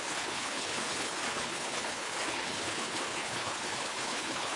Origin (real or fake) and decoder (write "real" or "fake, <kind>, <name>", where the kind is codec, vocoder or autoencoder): fake, codec, HILCodec